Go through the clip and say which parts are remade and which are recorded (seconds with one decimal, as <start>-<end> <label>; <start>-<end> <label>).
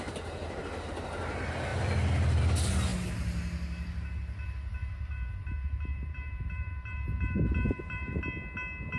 0.0-4.8 recorded; 4.8-8.2 remade; 8.2-9.0 recorded